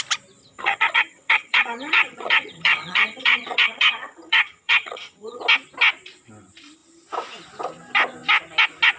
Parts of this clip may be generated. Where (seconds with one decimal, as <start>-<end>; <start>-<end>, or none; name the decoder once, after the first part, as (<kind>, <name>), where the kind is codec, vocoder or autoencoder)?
0.4-5.4 (vocoder, HiFi-GAN)

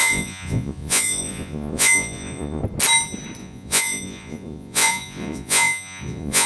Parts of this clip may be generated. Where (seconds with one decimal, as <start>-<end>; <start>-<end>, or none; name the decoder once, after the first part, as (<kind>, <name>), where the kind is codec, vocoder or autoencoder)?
0.0-2.6 (vocoder, Vocos); 3.4-6.5

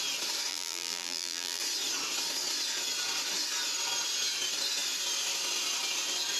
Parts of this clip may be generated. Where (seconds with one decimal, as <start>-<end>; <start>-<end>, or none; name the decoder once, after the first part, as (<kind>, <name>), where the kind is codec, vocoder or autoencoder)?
0.5-1.6 (vocoder, BigVGAN v2)